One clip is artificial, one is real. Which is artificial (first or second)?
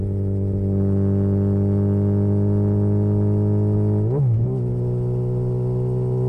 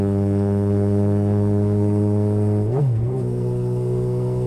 second